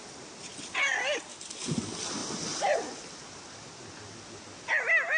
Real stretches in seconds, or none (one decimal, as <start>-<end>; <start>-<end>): 0.0-5.2